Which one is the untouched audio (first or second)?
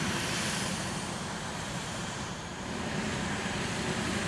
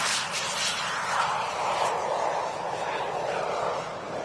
second